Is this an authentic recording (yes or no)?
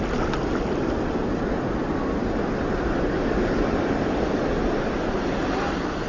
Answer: yes